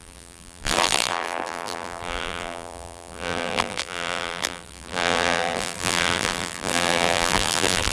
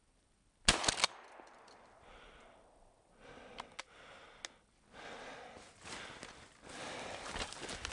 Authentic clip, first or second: second